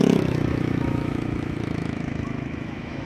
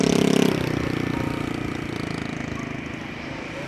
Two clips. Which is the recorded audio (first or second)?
second